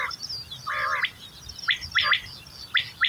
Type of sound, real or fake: real